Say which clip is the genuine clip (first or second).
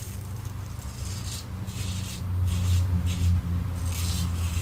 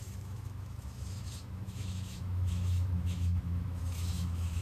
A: first